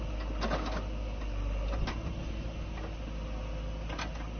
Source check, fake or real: real